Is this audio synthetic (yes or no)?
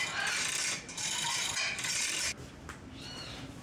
no